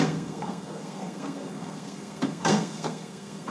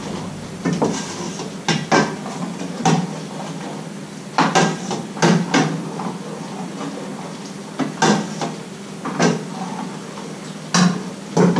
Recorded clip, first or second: second